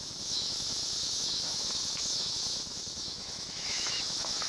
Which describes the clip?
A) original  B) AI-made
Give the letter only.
B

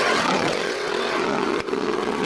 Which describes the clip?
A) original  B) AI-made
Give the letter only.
B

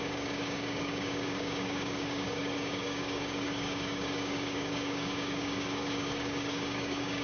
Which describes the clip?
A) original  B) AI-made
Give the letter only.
B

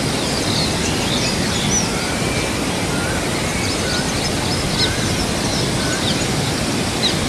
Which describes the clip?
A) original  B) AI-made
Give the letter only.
A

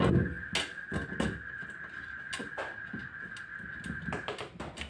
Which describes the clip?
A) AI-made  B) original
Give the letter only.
B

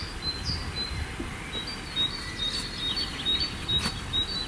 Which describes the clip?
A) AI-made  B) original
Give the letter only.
B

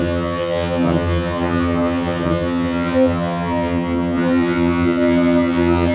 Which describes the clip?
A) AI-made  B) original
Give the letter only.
A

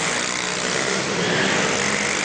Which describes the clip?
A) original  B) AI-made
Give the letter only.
A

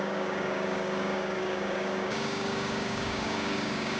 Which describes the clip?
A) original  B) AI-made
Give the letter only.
B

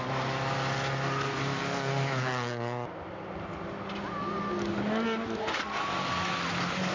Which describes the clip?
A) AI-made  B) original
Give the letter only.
B